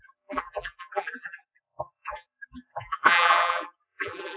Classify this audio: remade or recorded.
remade